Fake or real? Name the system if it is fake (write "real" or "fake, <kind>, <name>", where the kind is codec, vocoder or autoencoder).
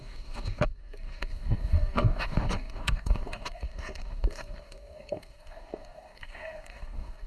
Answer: fake, codec, DAC